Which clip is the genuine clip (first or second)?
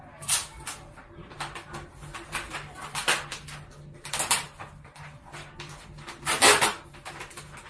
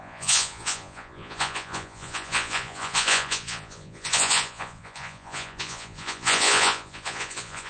first